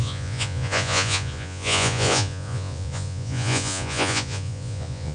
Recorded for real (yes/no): no